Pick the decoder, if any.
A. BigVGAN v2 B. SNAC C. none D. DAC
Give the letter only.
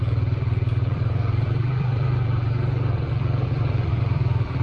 A